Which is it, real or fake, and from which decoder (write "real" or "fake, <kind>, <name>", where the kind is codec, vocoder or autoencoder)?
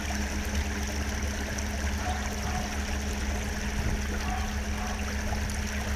real